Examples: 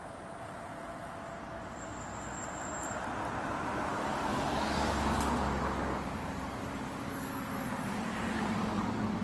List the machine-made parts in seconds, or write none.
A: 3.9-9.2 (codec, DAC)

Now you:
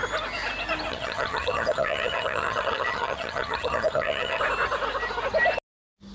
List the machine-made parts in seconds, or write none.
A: 0.9-4.4 (vocoder, HiFi-GAN)

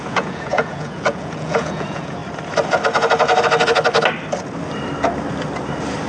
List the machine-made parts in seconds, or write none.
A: 0.0-2.2 (vocoder, Vocos)

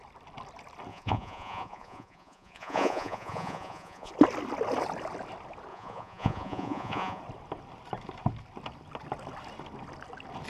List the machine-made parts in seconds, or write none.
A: 0.9-4.1 (vocoder, Vocos); 5.7-7.2

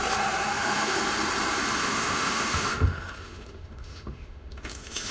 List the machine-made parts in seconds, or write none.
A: 0.5-1.0 (autoencoder, DAC-VAE); 1.8-5.1

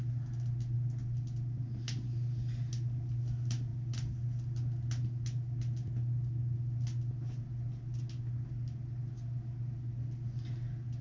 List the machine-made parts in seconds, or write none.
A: none